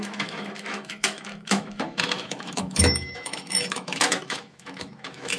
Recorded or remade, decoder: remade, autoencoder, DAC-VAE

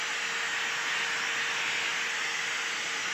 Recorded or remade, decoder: recorded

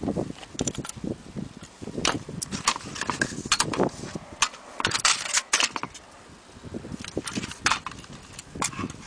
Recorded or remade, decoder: recorded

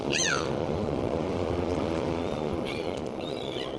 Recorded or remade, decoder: remade, vocoder, Vocos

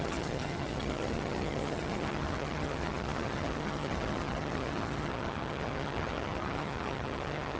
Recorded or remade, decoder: remade, vocoder, HiFi-GAN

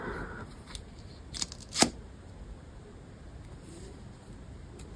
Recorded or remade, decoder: recorded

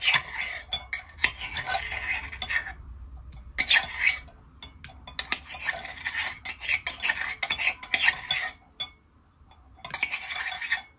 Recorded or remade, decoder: recorded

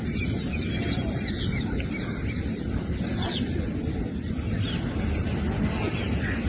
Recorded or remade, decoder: recorded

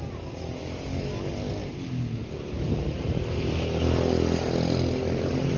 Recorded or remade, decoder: recorded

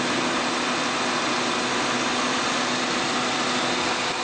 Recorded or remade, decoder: recorded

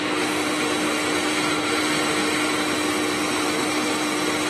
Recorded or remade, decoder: recorded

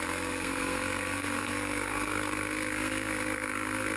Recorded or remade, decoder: remade, codec, SNAC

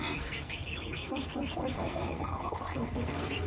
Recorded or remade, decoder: remade, codec, SNAC